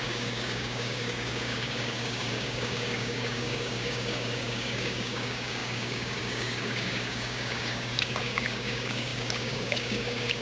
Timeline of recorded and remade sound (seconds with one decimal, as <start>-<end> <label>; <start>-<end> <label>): 0.0-10.4 remade